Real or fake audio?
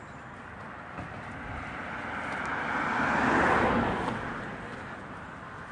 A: real